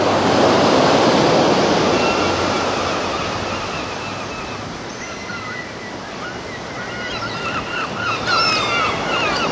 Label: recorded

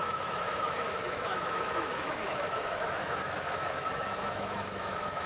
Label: remade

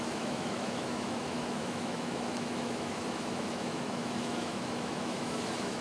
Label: remade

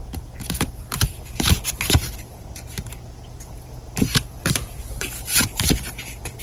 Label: remade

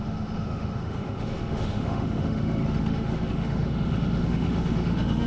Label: remade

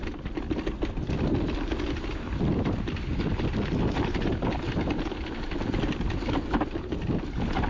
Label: recorded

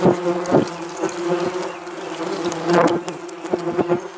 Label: recorded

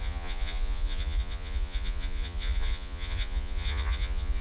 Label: remade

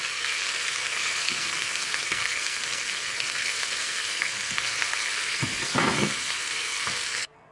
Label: remade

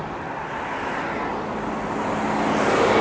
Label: recorded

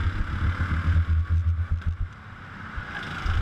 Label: recorded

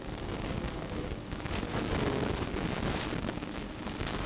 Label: remade